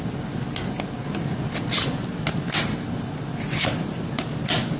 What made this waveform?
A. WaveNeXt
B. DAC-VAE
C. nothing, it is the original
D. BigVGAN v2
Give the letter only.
C